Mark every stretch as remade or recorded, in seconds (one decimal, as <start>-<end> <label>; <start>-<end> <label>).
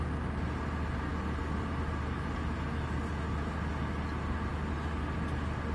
0.0-5.7 recorded